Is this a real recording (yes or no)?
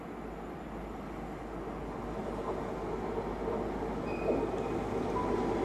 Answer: yes